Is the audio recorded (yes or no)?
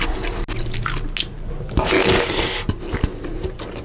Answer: yes